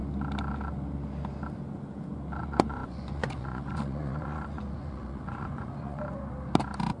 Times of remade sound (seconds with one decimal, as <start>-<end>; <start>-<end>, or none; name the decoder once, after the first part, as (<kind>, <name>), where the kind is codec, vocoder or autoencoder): 2.4-6.0 (vocoder, Vocos)